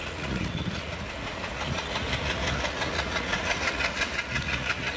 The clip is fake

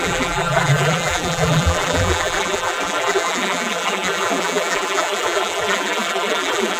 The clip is fake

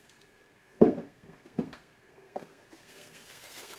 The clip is fake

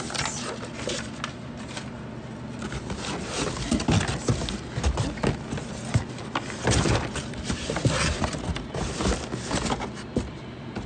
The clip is real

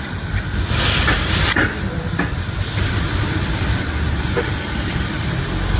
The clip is real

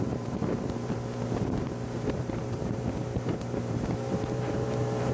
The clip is fake